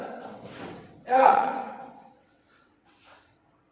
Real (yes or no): no